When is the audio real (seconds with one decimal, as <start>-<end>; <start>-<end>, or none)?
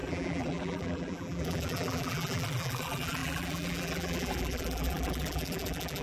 none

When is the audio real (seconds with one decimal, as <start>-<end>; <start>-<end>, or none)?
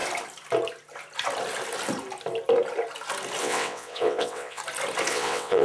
0.0-3.4; 4.6-5.1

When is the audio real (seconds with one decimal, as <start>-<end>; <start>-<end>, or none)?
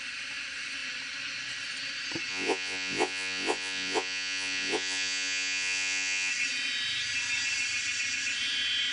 0.0-2.3; 6.3-8.9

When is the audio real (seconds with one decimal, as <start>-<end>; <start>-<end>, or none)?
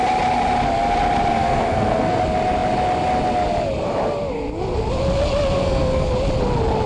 0.0-1.3; 2.2-5.6; 6.1-6.9